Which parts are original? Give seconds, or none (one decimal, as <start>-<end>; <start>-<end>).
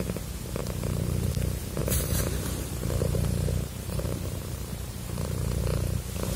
0.0-0.6; 1.3-1.8; 5.6-6.4